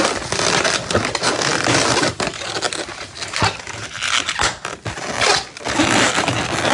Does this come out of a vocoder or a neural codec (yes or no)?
no